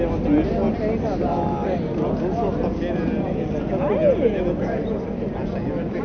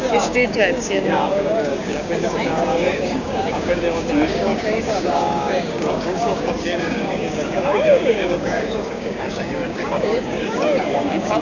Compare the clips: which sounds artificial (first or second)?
second